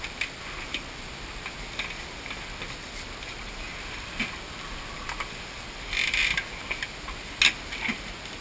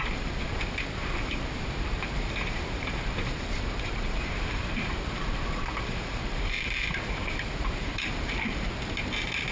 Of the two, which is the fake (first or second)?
second